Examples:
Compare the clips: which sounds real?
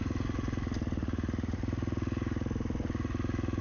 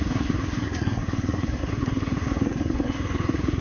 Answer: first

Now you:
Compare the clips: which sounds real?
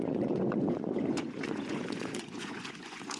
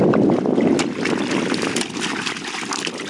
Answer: second